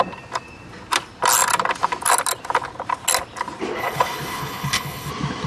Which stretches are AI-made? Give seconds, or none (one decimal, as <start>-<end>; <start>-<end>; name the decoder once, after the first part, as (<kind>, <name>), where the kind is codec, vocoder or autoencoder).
3.8-5.1 (codec, HILCodec)